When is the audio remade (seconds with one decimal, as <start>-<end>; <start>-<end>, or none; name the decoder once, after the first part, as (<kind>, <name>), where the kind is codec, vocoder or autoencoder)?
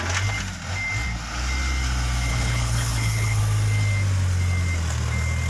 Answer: 2.3-3.4 (codec, HILCodec)